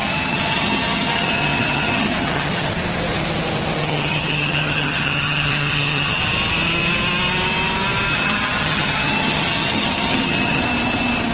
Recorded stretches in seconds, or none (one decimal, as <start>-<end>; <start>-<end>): 2.7-3.8; 6.2-8.1; 10.6-11.3